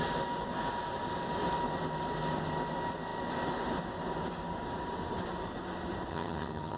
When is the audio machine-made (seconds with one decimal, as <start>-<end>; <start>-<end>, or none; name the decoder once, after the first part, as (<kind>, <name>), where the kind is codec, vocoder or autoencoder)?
6.1-6.8 (vocoder, HiFi-GAN)